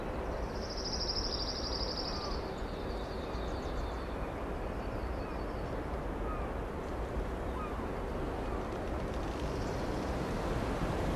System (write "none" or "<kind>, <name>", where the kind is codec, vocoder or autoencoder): none